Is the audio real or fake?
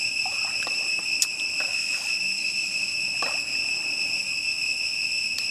fake